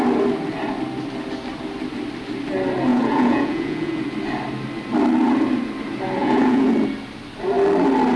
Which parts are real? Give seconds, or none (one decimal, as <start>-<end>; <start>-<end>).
0.0-2.9; 4.0-6.2; 6.7-8.2

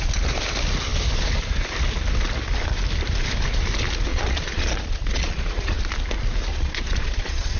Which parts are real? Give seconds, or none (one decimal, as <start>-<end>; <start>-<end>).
0.0-4.1; 5.8-6.5